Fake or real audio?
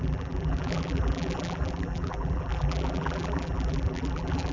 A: fake